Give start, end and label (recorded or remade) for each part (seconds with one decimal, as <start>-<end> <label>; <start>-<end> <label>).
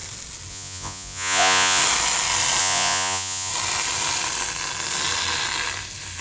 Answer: 0.0-0.5 recorded; 0.5-1.8 remade; 1.8-2.6 recorded; 2.6-3.5 remade; 3.5-6.2 recorded